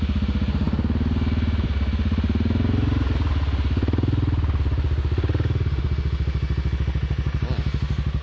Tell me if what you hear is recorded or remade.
recorded